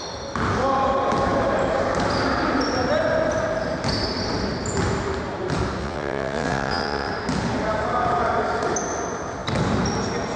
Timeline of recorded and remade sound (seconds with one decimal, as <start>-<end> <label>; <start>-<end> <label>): 0.0-5.8 recorded; 5.8-7.1 remade; 7.1-10.4 recorded